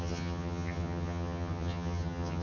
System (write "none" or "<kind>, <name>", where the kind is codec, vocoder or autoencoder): vocoder, HiFi-GAN